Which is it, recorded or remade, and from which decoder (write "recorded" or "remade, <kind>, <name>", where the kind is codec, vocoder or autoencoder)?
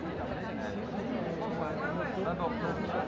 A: recorded